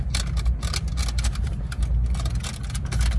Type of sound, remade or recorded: recorded